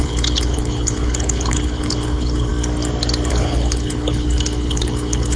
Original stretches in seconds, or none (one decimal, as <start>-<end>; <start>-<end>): 2.5-3.3